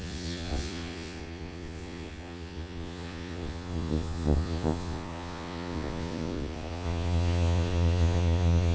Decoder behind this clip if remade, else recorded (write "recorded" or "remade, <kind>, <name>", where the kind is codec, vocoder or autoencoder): remade, vocoder, Vocos